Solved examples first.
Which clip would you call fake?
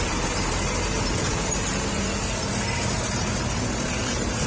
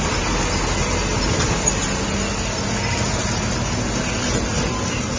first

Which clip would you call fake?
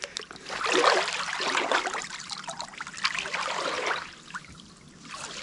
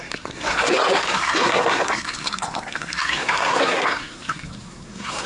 second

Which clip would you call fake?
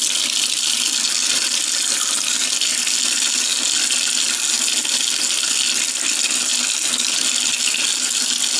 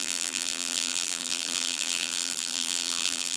second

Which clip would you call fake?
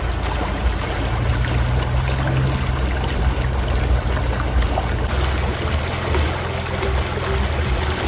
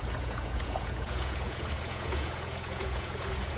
second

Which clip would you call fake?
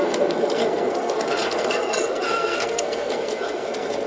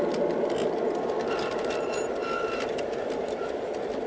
first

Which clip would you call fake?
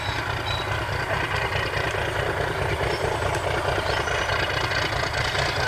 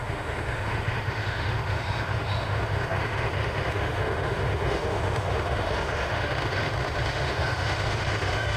second